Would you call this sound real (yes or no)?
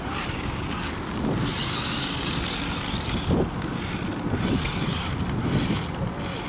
yes